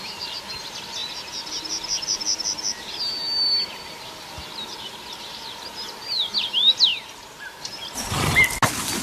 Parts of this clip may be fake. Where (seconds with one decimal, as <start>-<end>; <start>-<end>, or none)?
none